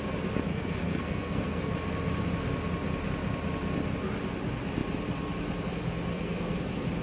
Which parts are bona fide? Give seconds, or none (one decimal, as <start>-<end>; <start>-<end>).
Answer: 0.0-0.5; 1.7-6.1; 6.6-7.0